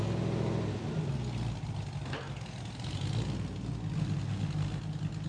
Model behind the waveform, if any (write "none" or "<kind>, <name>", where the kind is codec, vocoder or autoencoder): none